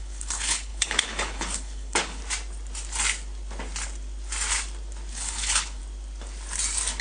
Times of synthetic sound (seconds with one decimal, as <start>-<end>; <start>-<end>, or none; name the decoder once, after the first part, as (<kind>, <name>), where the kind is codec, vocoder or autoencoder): 0.0-2.2 (codec, HILCodec); 5.1-5.8